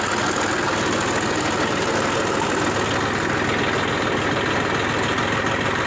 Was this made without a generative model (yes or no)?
yes